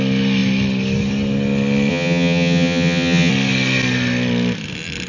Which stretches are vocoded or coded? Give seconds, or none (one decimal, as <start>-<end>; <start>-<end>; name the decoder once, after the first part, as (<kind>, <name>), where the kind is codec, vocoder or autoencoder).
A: 1.9-3.3 (vocoder, HiFi-GAN)